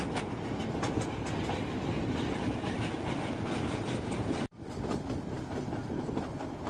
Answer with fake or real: real